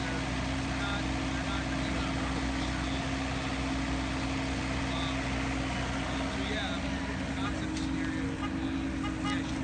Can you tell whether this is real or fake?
real